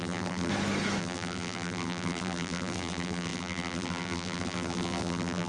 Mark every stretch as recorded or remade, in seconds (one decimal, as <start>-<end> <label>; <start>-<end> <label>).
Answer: 0.0-0.5 remade; 0.5-1.0 recorded; 1.0-5.5 remade